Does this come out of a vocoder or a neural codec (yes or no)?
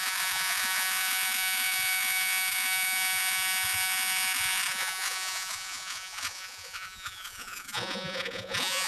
yes